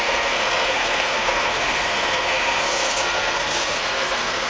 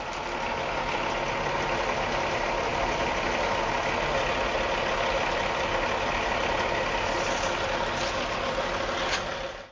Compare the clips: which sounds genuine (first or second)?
second